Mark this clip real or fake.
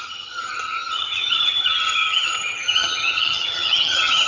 fake